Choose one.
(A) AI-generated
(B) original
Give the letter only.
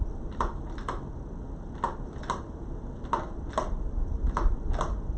B